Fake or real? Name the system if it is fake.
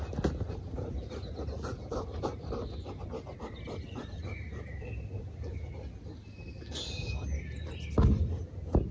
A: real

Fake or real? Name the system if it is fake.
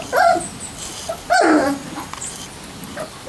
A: real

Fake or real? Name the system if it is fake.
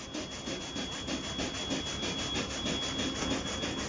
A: real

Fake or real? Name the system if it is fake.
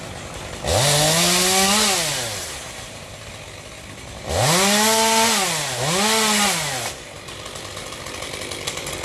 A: real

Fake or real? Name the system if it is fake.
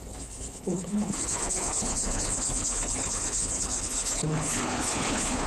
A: fake, codec, HILCodec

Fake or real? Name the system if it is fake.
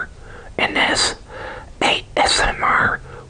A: real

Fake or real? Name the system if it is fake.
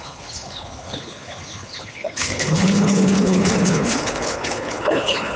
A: fake, codec, HILCodec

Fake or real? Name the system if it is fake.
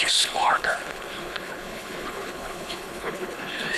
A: fake, codec, HILCodec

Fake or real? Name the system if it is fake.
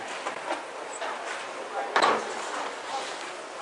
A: real